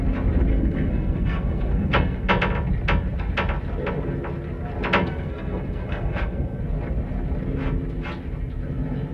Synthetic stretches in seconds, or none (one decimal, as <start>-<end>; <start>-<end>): 0.5-2.3; 5.0-6.6